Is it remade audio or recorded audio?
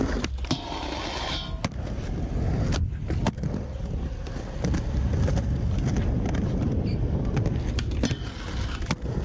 recorded